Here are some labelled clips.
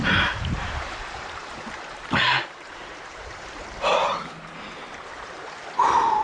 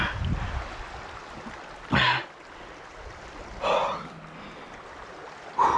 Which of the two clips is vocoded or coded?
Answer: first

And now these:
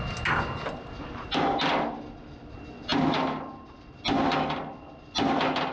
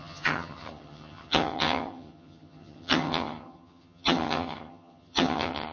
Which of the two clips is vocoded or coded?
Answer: second